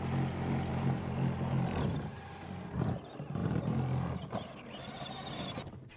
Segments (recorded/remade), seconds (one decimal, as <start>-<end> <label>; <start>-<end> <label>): 0.0-0.7 recorded; 0.7-2.3 remade; 2.3-3.4 recorded; 3.4-5.0 remade; 5.0-6.0 recorded